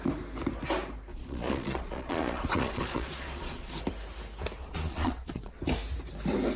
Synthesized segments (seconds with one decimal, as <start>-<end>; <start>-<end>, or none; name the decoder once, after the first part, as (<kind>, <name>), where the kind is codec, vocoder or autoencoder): 1.1-3.7 (vocoder, Vocos); 4.6-5.6